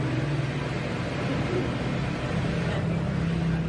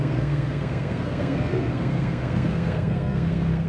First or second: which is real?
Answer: first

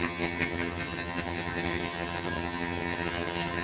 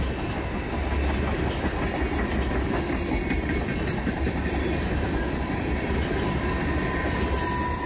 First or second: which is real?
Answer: second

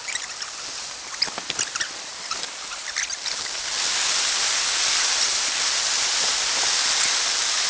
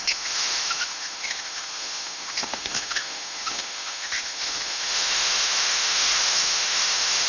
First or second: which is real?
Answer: first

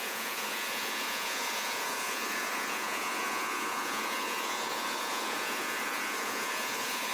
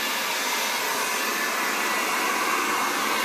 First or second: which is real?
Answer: second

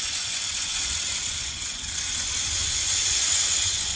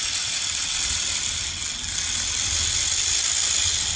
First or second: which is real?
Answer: second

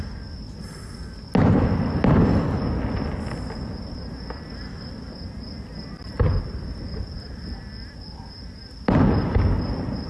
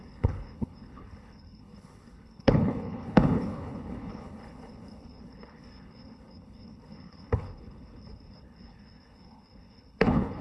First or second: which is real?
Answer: first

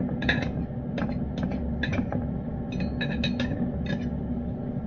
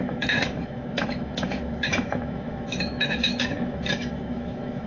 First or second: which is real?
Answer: first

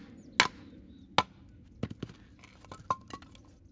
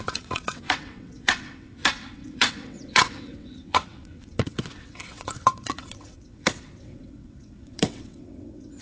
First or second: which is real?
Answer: first